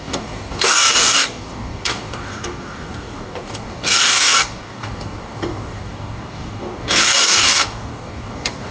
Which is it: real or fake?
fake